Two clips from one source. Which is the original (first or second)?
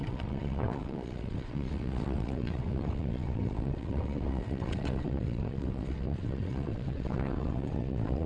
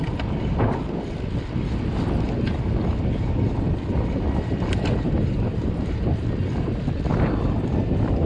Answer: second